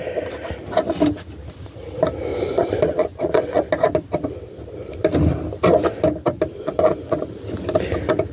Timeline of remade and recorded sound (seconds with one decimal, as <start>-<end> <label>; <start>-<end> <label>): 0.0-2.3 recorded; 2.3-3.7 remade; 3.7-6.5 recorded; 6.5-7.3 remade; 7.3-8.3 recorded